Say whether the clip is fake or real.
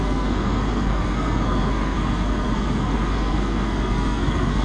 fake